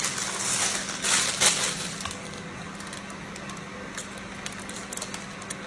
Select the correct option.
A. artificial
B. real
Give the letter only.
B